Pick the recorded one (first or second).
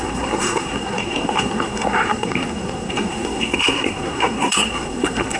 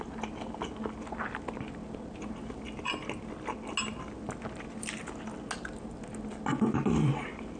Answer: second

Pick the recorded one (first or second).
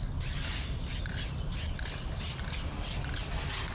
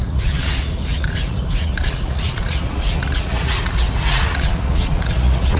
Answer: first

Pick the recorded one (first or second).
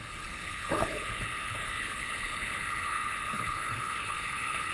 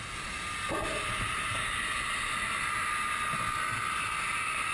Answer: second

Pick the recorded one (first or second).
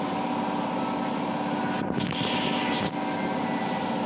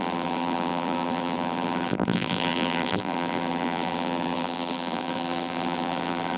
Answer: first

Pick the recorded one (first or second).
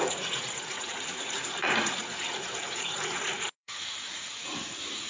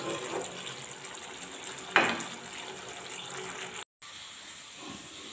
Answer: second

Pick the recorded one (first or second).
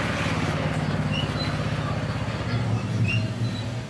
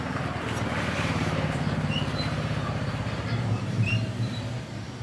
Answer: first